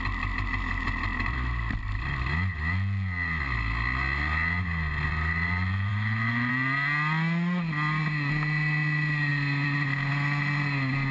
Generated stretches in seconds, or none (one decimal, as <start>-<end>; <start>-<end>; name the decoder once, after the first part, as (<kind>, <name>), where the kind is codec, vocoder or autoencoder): 5.9-6.5 (autoencoder, DAC-VAE)